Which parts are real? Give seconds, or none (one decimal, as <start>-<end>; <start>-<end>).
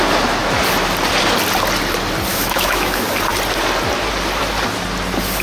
0.0-2.3; 2.9-5.4